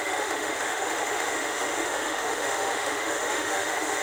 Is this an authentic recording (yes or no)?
no